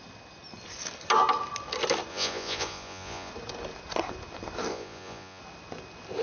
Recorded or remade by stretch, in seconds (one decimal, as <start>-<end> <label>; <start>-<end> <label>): 0.0-2.1 recorded; 2.1-3.3 remade; 3.3-4.7 recorded; 4.7-5.4 remade; 5.4-6.2 recorded